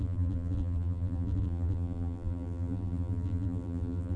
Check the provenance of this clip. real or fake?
fake